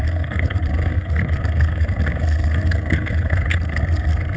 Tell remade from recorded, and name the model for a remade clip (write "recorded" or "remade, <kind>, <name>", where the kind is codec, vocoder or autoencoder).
remade, codec, SNAC